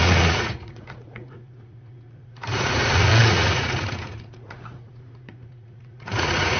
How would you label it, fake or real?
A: fake